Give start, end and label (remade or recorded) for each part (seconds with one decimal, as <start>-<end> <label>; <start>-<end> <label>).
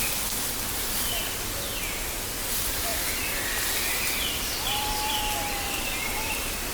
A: 0.0-1.7 remade; 1.7-2.5 recorded; 2.5-2.9 remade; 2.9-3.8 recorded; 3.8-6.7 remade